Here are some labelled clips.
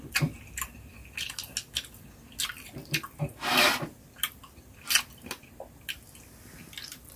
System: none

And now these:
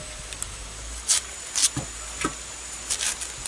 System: none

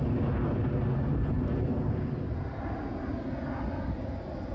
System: none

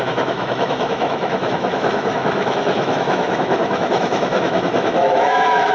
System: autoencoder, DAC-VAE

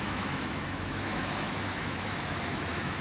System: autoencoder, DAC-VAE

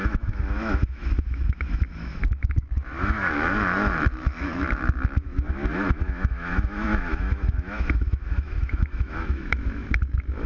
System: autoencoder, DAC-VAE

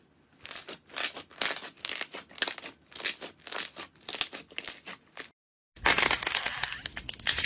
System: none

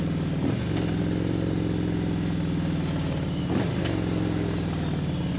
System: none